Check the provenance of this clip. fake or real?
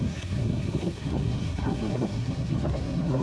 fake